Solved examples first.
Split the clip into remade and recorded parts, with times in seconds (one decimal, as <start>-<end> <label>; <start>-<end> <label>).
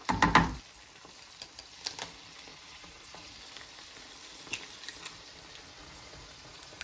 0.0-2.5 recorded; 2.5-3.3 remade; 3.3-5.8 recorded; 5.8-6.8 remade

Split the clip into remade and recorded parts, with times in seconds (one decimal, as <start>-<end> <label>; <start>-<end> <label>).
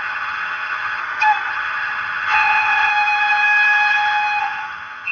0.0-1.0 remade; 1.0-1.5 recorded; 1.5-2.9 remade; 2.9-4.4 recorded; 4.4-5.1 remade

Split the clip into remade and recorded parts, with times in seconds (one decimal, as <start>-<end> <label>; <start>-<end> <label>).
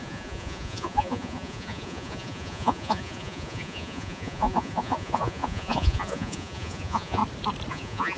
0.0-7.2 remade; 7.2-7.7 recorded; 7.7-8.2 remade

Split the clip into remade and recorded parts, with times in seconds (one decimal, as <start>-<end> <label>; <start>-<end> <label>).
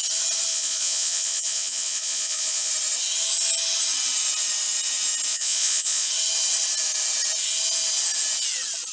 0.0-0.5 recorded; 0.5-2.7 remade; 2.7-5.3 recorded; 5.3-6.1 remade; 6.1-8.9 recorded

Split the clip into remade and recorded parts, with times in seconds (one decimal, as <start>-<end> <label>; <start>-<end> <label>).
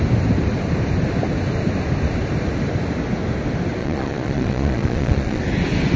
0.0-3.8 recorded; 3.8-5.4 remade; 5.4-6.0 recorded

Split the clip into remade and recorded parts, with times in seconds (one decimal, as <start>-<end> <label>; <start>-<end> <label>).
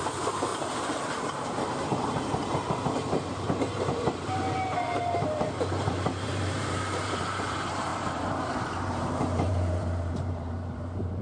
0.0-0.5 remade; 0.5-1.0 recorded; 1.0-11.2 remade